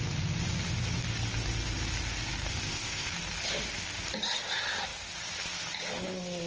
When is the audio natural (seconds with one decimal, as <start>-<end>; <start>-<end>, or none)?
0.0-2.5; 3.1-6.5